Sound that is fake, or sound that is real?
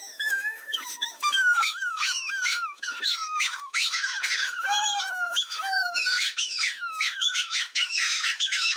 fake